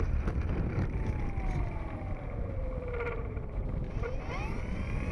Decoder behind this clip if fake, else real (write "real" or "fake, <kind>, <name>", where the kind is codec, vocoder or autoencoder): fake, vocoder, BigVGAN v2